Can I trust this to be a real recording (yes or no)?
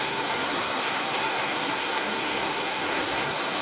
no